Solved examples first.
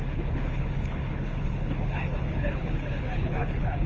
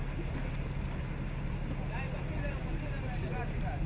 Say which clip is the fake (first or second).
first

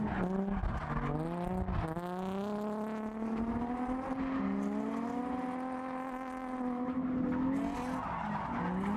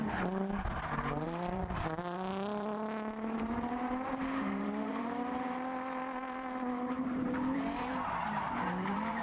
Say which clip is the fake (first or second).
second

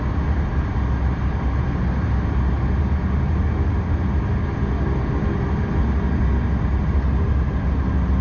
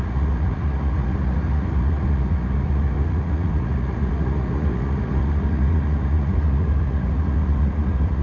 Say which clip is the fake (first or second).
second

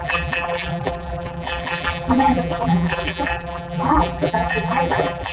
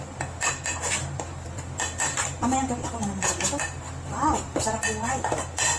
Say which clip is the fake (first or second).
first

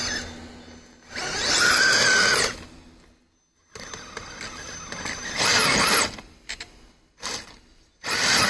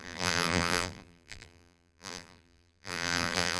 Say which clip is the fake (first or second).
second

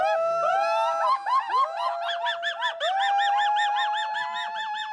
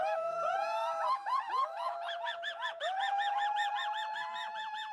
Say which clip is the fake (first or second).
second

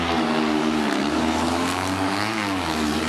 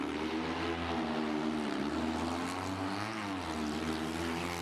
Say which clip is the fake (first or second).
first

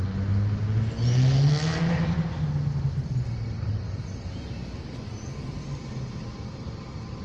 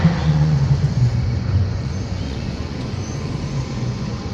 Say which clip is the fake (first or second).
second